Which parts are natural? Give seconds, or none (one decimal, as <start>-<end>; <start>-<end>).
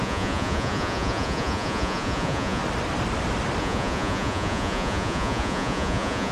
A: 2.6-3.6